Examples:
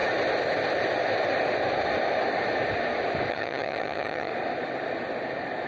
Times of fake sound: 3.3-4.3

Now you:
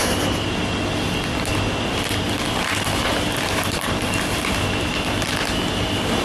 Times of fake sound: 3.1-4.1

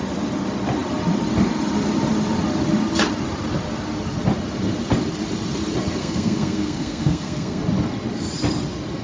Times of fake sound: 6.0-7.6

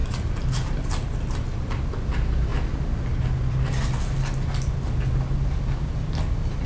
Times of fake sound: none

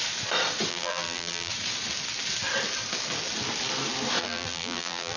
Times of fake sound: 0.7-1.5; 4.2-5.2

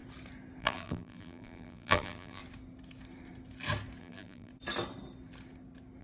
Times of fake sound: 0.6-2.4; 4.0-4.5

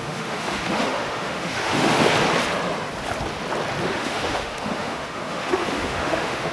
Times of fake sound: 0.0-2.1; 3.8-6.5